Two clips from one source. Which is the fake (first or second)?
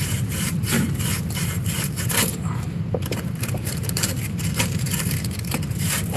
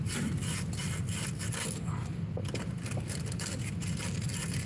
first